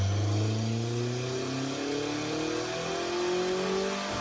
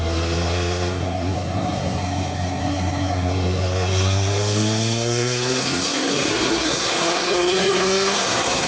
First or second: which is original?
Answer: first